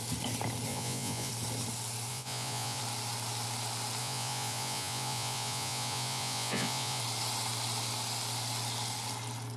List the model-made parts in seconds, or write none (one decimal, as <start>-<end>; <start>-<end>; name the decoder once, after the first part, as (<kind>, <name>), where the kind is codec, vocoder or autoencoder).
0.7-1.3 (vocoder, Vocos); 2.1-2.8; 4.0-7.0